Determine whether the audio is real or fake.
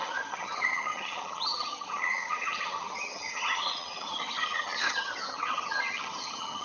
fake